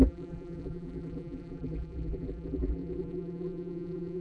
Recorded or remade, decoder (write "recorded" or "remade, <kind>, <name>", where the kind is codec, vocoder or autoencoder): remade, vocoder, BigVGAN v2